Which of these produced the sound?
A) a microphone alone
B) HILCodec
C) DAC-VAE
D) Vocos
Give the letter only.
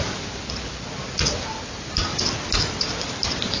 A